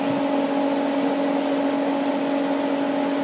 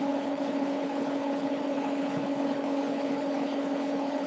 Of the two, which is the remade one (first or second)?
second